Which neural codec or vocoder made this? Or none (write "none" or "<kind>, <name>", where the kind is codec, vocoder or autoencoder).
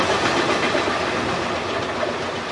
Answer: none